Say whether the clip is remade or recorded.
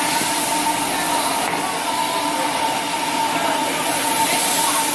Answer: remade